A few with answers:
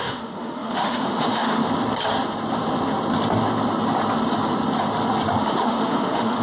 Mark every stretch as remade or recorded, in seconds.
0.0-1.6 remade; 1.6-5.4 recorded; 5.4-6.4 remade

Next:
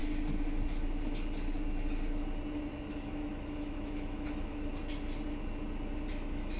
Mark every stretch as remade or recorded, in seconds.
0.0-2.9 recorded; 2.9-4.7 remade; 4.7-6.1 recorded; 6.1-6.6 remade

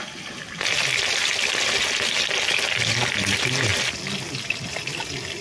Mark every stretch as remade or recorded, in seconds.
0.0-5.4 recorded

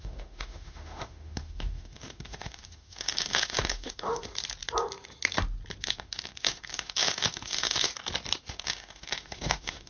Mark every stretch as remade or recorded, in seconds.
0.0-4.3 remade; 4.3-5.8 recorded; 5.8-7.9 remade; 7.9-8.5 recorded; 8.5-9.9 remade

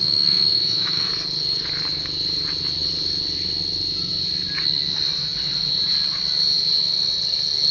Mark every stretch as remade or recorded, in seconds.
0.0-1.1 remade; 1.1-7.7 recorded

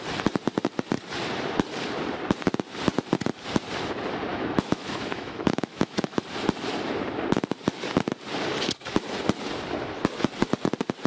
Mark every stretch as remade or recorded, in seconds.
0.0-4.3 recorded; 4.3-6.2 remade; 6.2-11.1 recorded

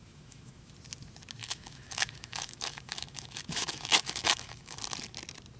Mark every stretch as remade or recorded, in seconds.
0.0-0.7 remade; 0.7-1.4 recorded; 1.4-4.8 remade; 4.8-5.6 recorded

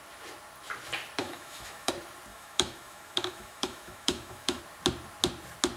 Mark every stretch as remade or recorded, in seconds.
0.0-1.2 recorded; 1.2-1.9 remade; 1.9-2.3 recorded; 2.3-4.6 remade; 4.6-5.8 recorded